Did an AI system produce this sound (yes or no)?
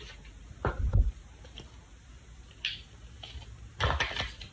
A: no